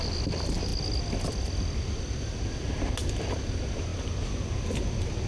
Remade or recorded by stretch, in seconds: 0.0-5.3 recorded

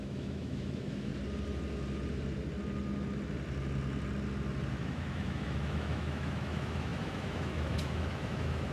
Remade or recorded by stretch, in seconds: 0.0-1.1 remade; 1.1-4.7 recorded; 4.7-8.7 remade

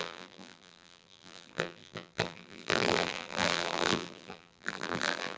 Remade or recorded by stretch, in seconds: 0.0-5.4 remade

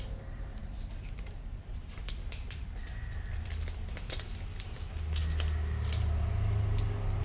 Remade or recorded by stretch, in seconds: 0.0-0.6 recorded; 0.6-4.9 remade; 4.9-7.2 recorded